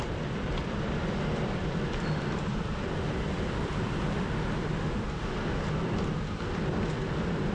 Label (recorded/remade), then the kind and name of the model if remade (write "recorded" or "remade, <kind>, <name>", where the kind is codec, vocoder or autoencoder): remade, vocoder, BigVGAN v2